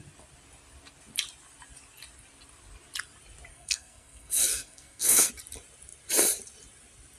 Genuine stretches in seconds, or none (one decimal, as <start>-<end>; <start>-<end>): 0.0-3.5; 5.3-7.2